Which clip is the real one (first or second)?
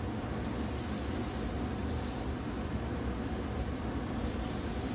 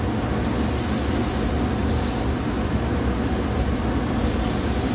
second